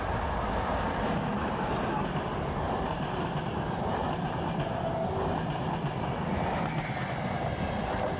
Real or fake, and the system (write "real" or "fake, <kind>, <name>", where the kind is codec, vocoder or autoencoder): real